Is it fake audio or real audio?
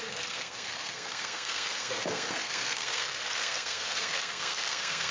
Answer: fake